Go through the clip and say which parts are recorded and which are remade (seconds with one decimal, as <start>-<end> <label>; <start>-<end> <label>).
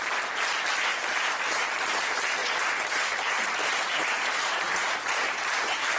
0.0-0.9 recorded; 0.9-1.5 remade; 1.5-2.4 recorded; 2.4-6.0 remade